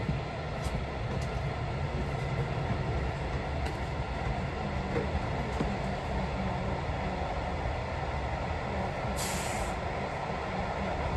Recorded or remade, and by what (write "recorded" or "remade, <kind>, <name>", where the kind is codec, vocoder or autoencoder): recorded